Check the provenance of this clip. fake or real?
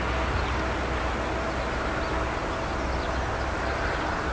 real